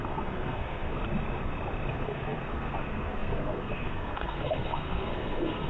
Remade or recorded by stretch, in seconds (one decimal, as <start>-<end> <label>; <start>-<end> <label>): 0.0-1.0 remade; 1.0-1.9 recorded; 1.9-5.7 remade